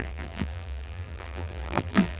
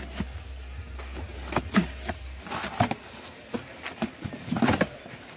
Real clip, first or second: second